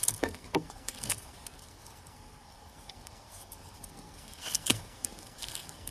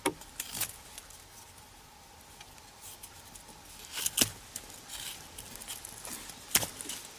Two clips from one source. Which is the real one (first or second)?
second